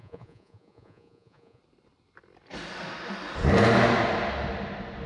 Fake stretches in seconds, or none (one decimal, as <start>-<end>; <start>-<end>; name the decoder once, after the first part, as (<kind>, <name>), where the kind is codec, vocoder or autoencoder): 0.0-1.6 (vocoder, Vocos)